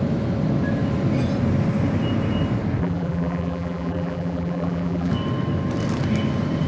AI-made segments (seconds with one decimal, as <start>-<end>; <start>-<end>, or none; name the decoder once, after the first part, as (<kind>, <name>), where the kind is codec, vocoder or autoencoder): 2.8-5.1 (vocoder, BigVGAN v2)